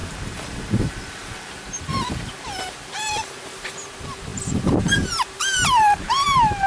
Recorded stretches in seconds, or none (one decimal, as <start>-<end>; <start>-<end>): 0.0-1.5